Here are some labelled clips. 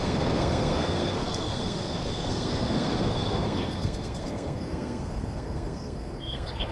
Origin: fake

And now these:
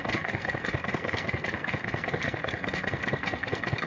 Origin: fake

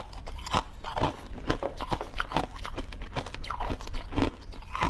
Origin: real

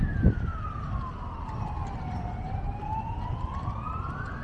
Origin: real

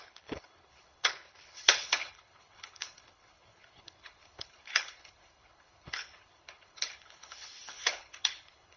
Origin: fake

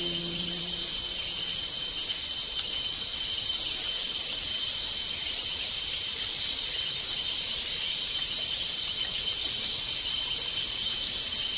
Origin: fake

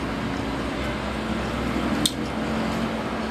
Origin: real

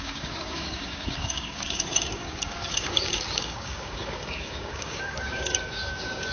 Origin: fake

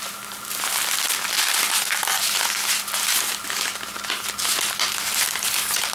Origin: real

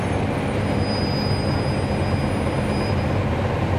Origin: real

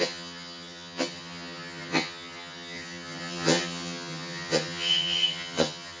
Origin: fake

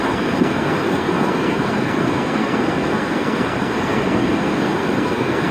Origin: fake